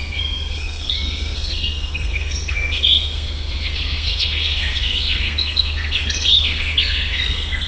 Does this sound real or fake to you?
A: fake